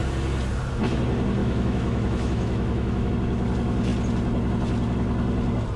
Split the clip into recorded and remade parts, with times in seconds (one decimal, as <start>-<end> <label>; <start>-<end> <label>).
0.0-1.4 recorded; 1.4-3.1 remade; 3.1-5.8 recorded